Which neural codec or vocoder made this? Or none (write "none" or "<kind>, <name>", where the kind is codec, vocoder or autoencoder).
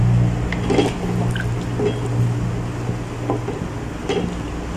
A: none